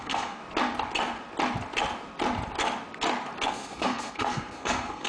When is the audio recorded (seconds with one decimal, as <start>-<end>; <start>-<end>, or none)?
0.4-3.5